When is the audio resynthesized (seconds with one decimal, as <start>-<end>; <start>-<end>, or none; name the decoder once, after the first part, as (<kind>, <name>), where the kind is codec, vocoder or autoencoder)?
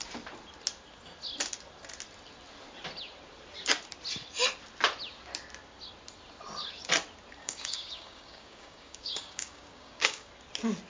7.4-10.3 (codec, DAC)